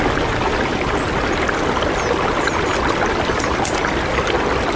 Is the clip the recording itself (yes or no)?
yes